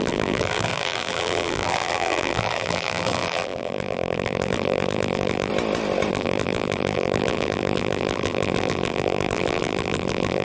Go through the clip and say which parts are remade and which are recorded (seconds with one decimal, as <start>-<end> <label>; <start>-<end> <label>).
0.0-5.5 remade; 5.5-6.1 recorded; 6.1-10.4 remade